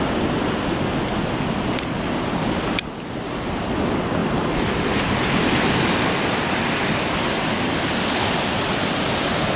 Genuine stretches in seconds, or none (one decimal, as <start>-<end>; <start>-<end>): 0.0-4.2; 7.7-9.6